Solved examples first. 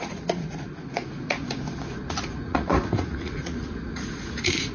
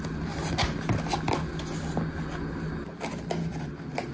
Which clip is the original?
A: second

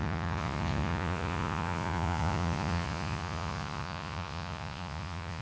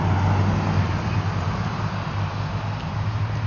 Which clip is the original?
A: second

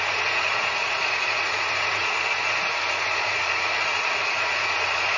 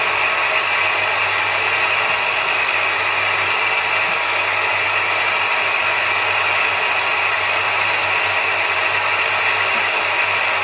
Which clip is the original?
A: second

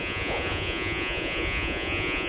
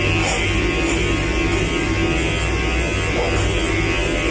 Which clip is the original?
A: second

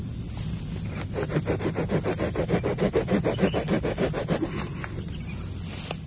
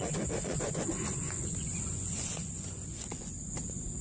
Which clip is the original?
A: first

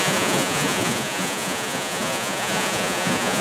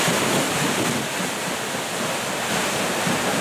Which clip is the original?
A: second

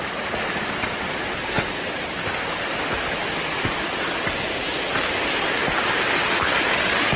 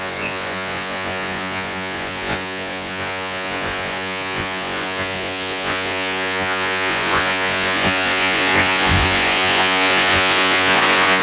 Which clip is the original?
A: first